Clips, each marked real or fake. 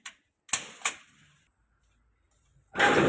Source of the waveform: real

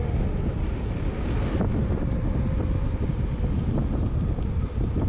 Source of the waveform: real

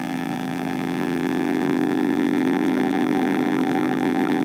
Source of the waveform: fake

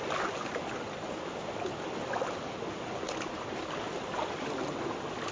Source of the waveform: real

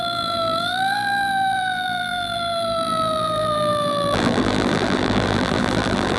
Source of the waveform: fake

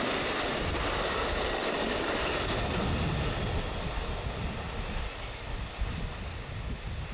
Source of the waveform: real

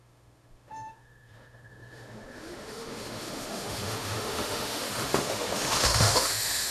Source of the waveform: fake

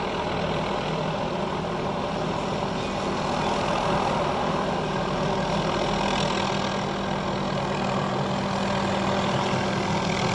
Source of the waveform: real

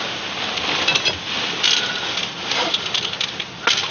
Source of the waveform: real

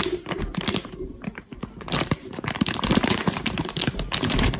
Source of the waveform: fake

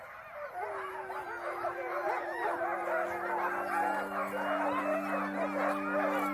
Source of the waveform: real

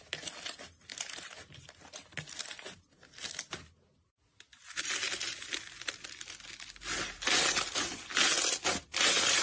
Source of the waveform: real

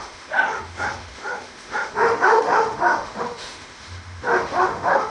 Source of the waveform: fake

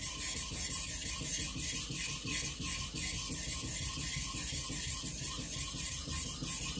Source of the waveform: real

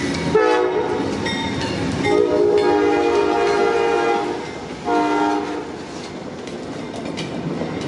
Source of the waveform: real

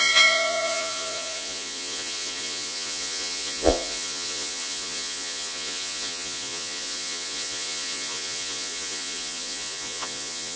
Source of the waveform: fake